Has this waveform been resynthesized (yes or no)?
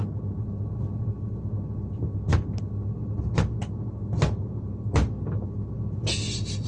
no